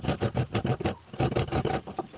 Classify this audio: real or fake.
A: real